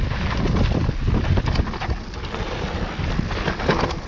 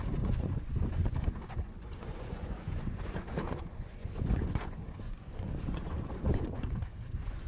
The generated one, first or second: second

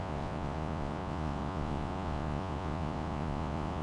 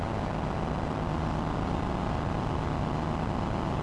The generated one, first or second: first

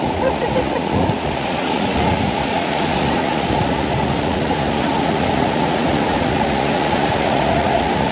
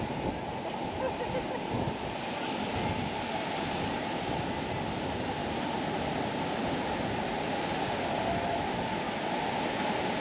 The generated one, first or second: first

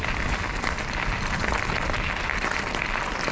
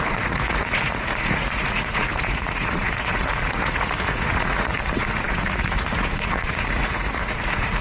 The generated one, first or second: second